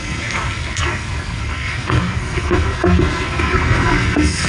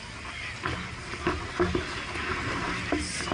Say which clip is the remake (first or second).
first